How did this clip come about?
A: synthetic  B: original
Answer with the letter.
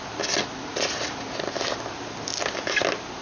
B